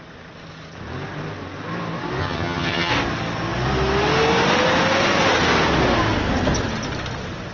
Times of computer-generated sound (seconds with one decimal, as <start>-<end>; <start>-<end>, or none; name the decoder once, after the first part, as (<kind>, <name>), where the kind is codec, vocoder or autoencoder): 2.2-2.9 (vocoder, HiFi-GAN)